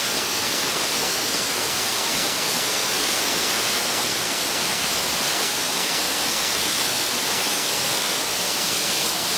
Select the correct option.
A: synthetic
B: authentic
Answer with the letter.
A